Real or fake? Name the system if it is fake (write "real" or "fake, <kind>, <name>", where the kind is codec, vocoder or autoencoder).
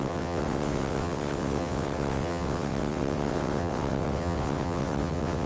fake, vocoder, WaveNeXt